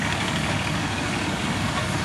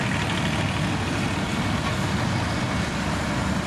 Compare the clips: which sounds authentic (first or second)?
second